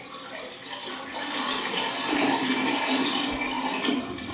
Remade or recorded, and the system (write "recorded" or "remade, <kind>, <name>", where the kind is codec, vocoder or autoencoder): recorded